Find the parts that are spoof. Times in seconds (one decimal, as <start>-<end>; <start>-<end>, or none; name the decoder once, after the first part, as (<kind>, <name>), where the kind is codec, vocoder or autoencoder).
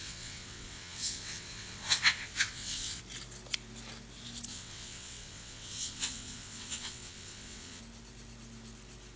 0.0-3.0 (vocoder, WaveNeXt); 4.5-7.8